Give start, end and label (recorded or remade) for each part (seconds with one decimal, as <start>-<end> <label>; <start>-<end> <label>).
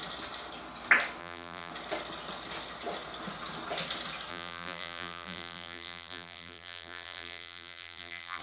0.0-1.2 recorded; 1.2-1.7 remade; 1.7-4.3 recorded; 4.3-8.4 remade